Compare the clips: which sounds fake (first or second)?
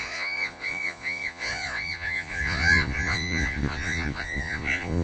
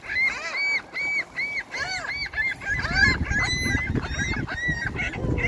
first